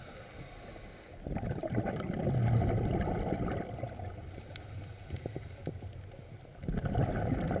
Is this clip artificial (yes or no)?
no